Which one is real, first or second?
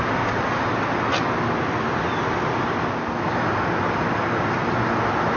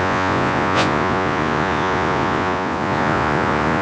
first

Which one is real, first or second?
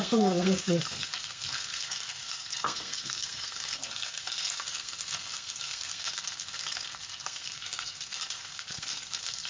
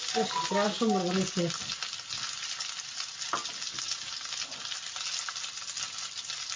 second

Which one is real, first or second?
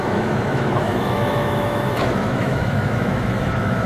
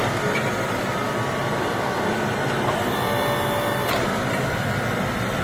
second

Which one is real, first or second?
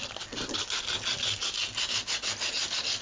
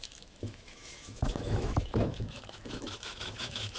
first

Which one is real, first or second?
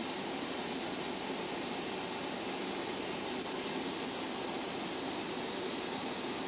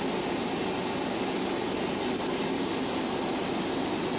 second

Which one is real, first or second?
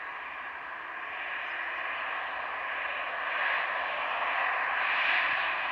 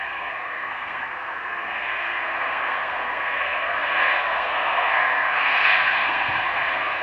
first